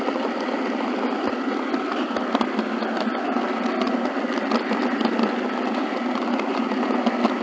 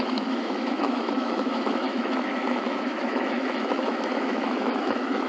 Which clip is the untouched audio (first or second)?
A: first